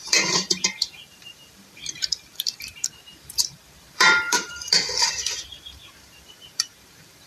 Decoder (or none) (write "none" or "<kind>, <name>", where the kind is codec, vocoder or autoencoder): vocoder, BigVGAN v2